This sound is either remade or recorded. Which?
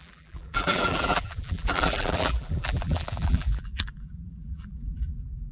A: remade